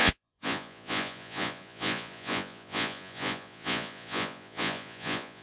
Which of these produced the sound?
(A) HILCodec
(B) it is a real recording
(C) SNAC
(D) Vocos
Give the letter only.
D